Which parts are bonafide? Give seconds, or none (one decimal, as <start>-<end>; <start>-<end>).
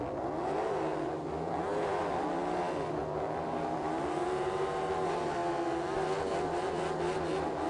0.0-7.7